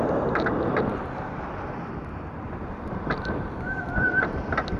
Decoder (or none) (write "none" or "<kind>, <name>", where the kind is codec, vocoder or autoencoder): vocoder, BigVGAN v2